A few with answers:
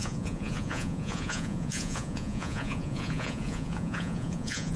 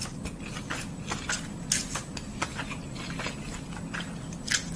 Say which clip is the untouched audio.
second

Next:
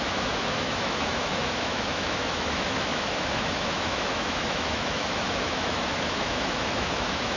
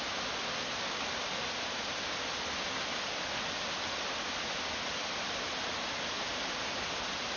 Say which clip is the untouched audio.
second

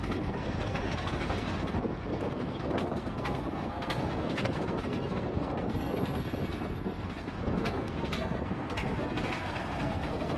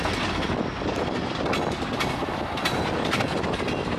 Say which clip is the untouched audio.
second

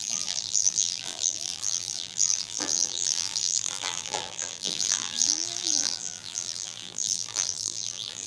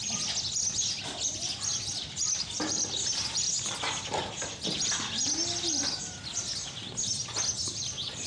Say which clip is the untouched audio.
second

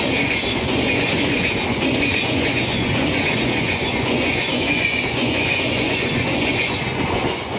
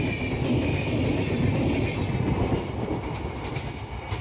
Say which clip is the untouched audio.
second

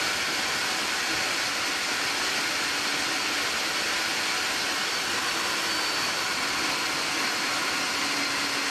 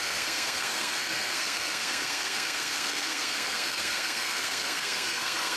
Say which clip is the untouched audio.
first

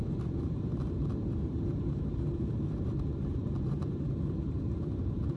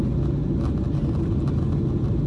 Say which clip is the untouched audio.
second